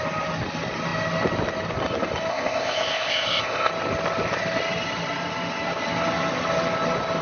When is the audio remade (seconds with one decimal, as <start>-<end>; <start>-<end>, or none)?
2.3-3.7